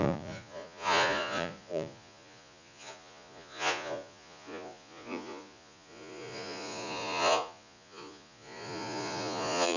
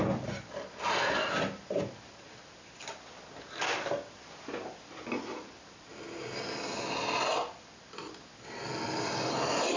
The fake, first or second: first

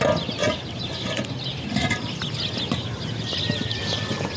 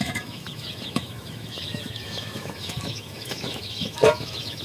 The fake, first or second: second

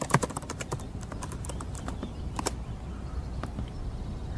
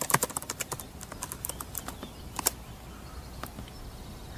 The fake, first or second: first